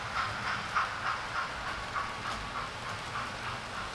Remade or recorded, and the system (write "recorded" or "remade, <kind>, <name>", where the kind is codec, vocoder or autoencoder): recorded